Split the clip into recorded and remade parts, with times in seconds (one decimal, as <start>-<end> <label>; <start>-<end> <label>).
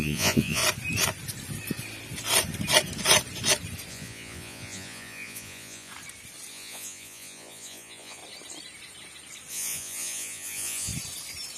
0.0-0.6 remade; 0.6-3.9 recorded; 3.9-5.9 remade; 5.9-6.5 recorded; 6.5-8.2 remade; 8.2-9.5 recorded; 9.5-10.9 remade; 10.9-11.6 recorded